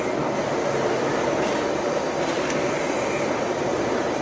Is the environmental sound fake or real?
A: real